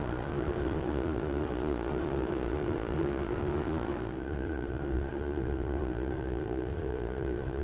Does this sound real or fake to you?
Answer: fake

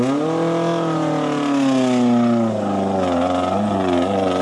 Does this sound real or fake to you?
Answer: real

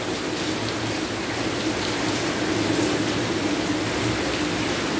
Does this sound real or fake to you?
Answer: real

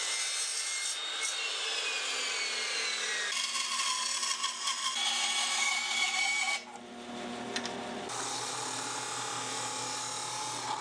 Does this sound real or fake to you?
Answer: real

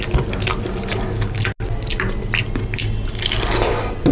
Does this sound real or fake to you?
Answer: real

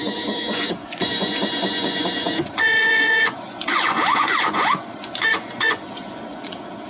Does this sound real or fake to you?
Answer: fake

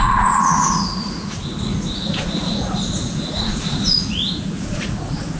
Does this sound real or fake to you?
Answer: fake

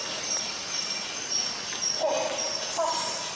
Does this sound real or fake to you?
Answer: real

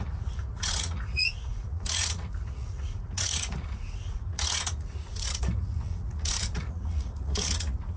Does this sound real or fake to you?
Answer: fake